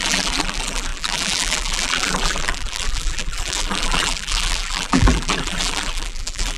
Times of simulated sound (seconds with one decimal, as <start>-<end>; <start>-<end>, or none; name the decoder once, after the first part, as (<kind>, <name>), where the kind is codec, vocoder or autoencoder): 0.0-6.6 (vocoder, BigVGAN v2)